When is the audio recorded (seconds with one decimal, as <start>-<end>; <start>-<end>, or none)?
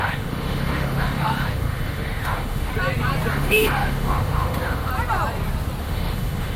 2.7-3.3; 4.9-5.8